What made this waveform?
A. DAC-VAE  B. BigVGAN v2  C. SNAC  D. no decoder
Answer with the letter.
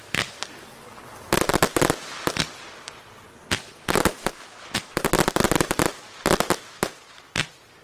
D